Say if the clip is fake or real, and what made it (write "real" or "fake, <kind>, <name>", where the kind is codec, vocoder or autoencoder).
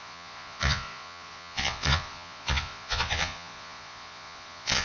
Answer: fake, vocoder, Vocos